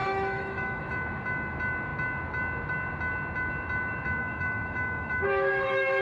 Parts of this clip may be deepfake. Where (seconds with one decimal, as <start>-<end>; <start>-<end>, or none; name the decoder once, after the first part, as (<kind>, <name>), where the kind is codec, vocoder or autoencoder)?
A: 0.0-0.8 (autoencoder, DAC-VAE); 4.2-6.0